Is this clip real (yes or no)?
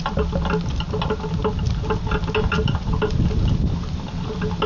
yes